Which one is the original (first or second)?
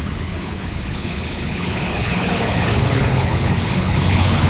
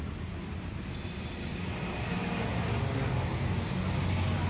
second